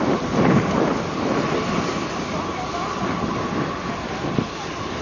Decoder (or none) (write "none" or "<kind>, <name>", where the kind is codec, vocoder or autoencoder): none